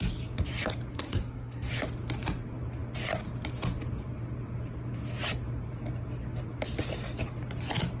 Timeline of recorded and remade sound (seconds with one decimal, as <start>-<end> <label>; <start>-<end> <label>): 0.0-0.9 recorded; 0.9-1.7 remade; 1.7-8.0 recorded